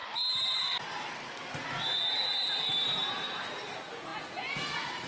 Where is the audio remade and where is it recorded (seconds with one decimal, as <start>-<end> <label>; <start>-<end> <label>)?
0.0-3.1 recorded; 3.1-5.1 remade